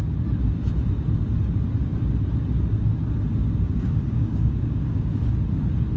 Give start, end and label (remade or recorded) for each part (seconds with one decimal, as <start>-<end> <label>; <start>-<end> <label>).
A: 0.0-3.4 recorded; 3.4-5.3 remade; 5.3-6.0 recorded

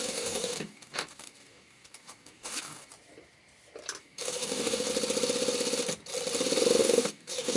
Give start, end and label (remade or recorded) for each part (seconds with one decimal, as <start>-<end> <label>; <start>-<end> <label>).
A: 0.0-2.9 remade; 2.9-4.0 recorded; 4.0-4.9 remade; 4.9-6.8 recorded; 6.8-7.6 remade

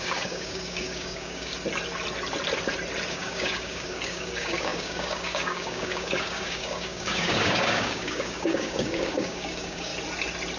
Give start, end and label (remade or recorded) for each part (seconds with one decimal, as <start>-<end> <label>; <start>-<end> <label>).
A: 0.0-1.5 remade; 1.5-3.1 recorded; 3.1-9.9 remade; 9.9-10.6 recorded

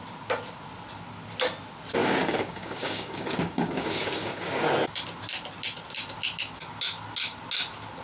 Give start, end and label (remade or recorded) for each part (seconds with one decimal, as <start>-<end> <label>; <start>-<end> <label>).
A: 0.0-2.0 recorded; 2.0-4.5 remade; 4.5-8.0 recorded

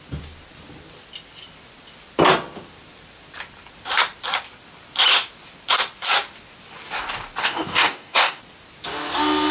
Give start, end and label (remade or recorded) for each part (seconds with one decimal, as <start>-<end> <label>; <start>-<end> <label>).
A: 0.0-7.4 recorded; 7.4-8.4 remade; 8.4-9.5 recorded

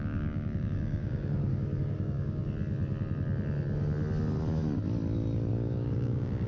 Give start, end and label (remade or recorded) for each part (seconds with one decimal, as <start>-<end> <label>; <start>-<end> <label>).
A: 0.0-2.4 remade; 2.4-5.5 recorded; 5.5-6.5 remade